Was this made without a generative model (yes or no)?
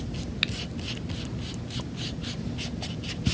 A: yes